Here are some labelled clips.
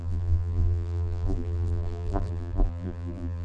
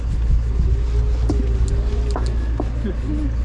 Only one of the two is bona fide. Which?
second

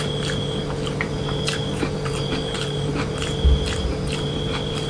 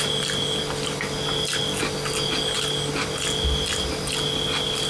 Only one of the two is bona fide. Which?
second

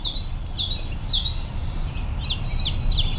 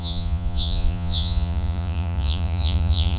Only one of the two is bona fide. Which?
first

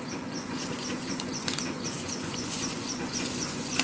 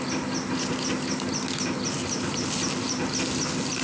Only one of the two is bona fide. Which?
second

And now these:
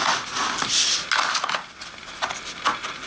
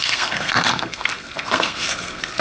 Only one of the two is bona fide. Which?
first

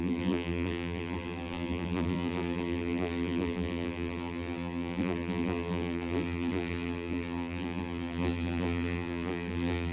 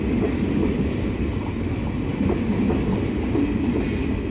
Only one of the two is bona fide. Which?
second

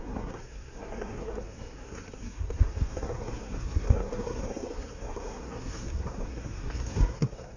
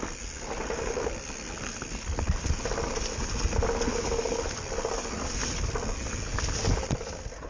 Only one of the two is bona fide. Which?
second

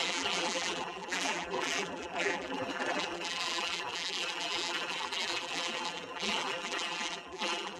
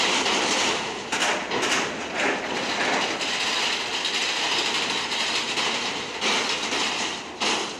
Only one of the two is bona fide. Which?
second